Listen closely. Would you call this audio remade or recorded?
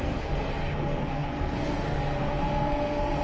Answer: remade